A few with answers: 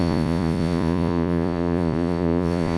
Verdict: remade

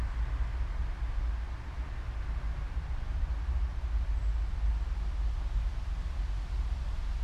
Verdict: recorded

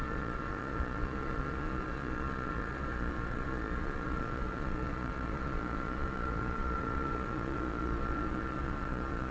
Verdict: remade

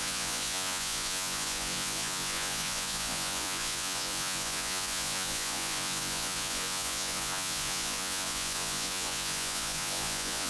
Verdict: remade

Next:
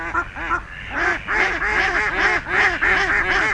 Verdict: recorded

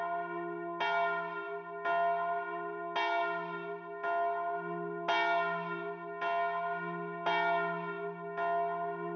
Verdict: recorded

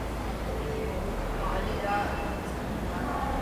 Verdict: recorded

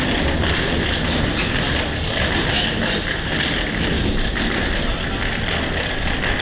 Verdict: recorded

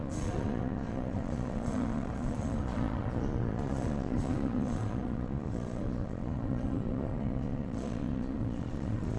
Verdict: remade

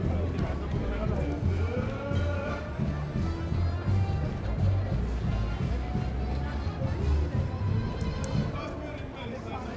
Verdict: recorded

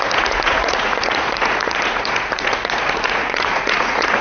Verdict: remade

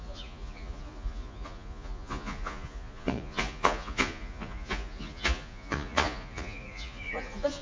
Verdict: remade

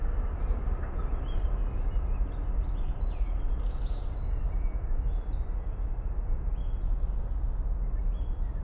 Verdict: recorded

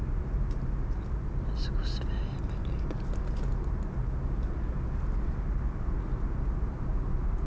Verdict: recorded